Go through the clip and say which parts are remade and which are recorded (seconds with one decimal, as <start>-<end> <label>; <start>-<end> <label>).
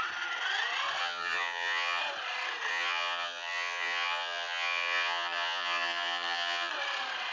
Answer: 0.0-1.0 recorded; 1.0-2.0 remade; 2.0-2.7 recorded; 2.7-6.7 remade; 6.7-7.3 recorded